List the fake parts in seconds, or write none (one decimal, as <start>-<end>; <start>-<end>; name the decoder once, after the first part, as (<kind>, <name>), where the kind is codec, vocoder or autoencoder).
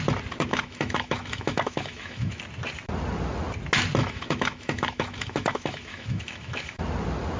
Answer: 0.5-2.4 (autoencoder, DAC-VAE); 4.0-6.8